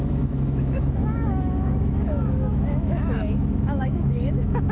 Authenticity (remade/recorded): remade